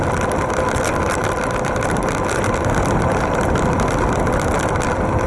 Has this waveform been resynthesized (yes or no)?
no